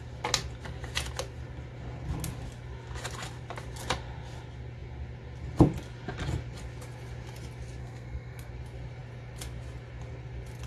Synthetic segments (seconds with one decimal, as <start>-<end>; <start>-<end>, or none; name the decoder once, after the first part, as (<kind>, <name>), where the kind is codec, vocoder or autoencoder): 7.8-8.5 (codec, SNAC)